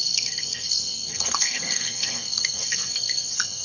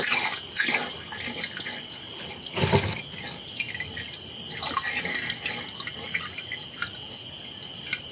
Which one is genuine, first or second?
second